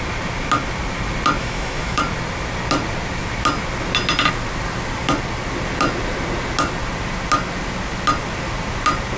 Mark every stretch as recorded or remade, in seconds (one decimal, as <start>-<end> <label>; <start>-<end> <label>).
0.0-1.4 recorded; 1.4-2.0 remade; 2.0-9.2 recorded